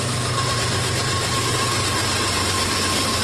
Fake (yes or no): yes